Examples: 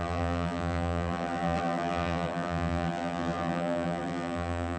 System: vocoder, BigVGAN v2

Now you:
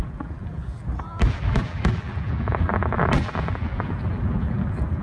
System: vocoder, BigVGAN v2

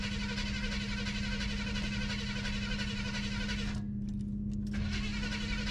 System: none